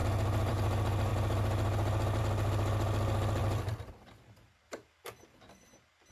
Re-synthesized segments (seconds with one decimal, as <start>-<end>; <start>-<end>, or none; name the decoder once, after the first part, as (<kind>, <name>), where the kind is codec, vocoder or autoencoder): 0.5-1.1 (vocoder, BigVGAN v2); 2.2-6.1